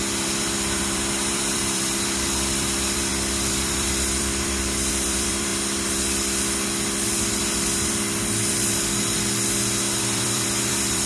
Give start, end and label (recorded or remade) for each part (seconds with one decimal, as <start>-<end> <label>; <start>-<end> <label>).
0.0-5.5 remade; 5.5-10.0 recorded; 10.0-11.1 remade